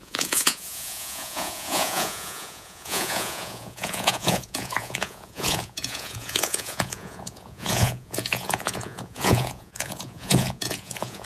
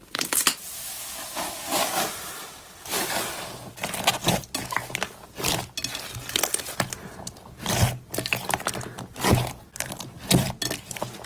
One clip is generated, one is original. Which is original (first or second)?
second